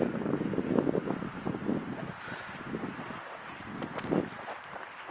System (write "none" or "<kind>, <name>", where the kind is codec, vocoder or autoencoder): none